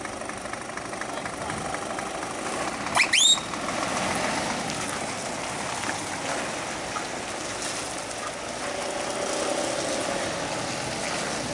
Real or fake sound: real